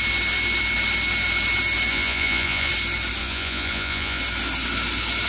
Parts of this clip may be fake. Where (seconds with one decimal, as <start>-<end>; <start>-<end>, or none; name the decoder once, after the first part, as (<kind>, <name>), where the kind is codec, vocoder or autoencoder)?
1.9-2.7 (vocoder, Vocos); 3.2-4.2